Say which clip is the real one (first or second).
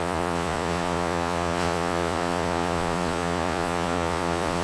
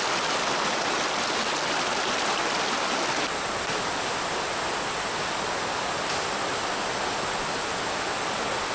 second